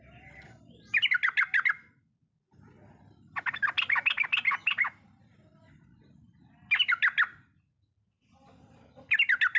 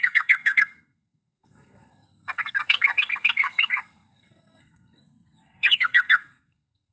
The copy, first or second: second